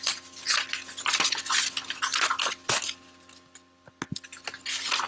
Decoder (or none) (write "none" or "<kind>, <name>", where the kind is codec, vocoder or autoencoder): none